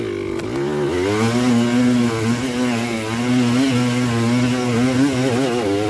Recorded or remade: recorded